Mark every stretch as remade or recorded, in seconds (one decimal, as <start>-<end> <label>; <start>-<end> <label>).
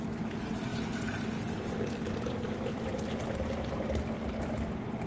0.0-2.9 recorded; 2.9-3.5 remade; 3.5-5.1 recorded